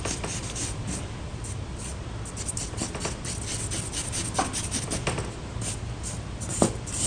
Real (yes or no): yes